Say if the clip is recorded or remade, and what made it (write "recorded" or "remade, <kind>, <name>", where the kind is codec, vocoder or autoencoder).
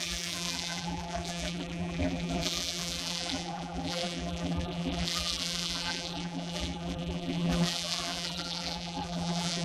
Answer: remade, vocoder, BigVGAN v2